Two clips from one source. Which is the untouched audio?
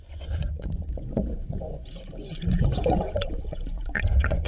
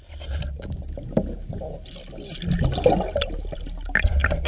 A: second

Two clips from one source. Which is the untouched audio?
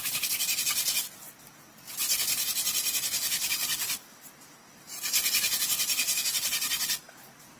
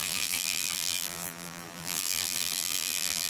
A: first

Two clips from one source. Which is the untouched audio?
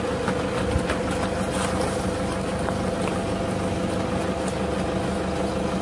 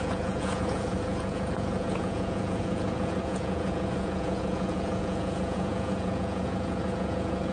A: first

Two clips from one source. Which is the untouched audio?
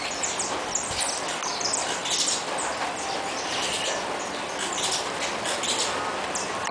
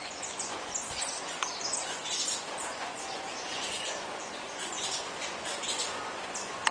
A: first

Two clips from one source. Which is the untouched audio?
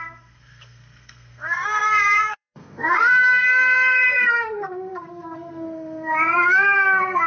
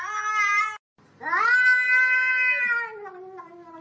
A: second